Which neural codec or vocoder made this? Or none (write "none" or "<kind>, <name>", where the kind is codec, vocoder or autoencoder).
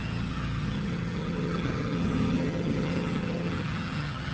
vocoder, HiFi-GAN